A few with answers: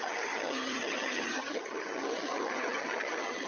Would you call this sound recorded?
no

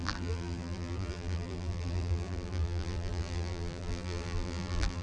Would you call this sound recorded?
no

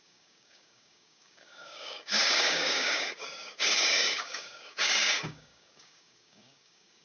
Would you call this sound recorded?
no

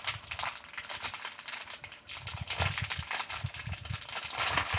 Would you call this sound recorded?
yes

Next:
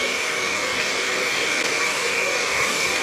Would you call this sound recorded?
no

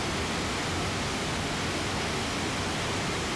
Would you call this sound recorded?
yes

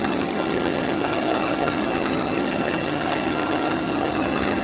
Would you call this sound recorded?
no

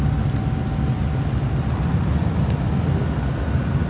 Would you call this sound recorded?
yes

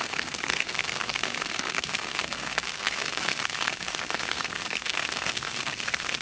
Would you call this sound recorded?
no